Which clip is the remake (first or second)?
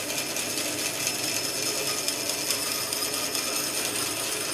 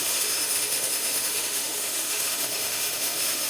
second